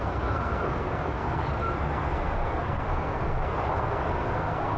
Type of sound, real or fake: fake